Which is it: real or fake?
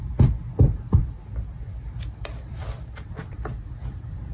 real